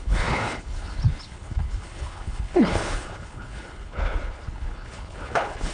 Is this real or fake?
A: fake